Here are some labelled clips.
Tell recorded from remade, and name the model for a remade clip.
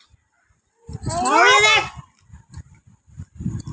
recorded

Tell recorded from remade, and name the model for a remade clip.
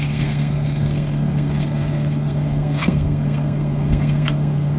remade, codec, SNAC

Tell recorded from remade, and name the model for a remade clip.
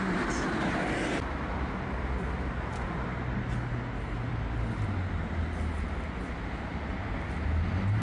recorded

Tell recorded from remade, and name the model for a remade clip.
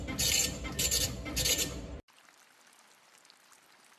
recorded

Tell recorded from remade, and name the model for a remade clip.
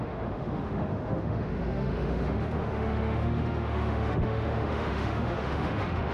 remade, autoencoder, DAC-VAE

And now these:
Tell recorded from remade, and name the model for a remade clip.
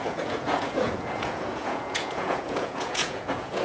remade, vocoder, Vocos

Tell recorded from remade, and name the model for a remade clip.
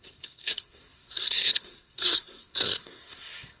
remade, codec, SNAC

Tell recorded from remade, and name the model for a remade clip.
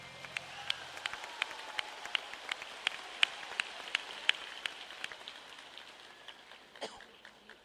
recorded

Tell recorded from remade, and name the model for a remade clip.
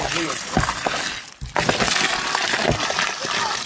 recorded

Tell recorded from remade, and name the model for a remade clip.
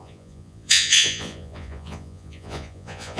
remade, vocoder, Vocos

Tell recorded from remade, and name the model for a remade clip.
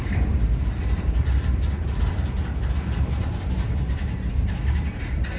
remade, vocoder, BigVGAN v2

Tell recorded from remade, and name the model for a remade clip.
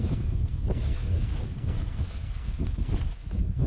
remade, codec, SNAC